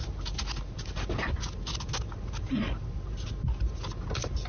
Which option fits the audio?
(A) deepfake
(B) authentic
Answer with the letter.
B